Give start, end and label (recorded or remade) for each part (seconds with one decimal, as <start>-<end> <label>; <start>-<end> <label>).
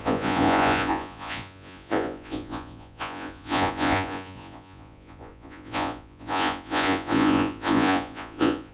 0.0-8.7 remade